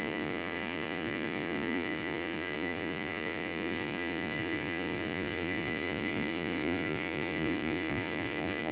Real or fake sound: fake